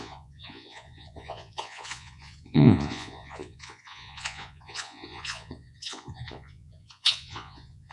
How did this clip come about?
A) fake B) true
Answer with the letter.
A